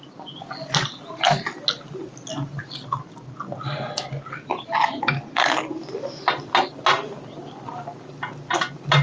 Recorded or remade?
recorded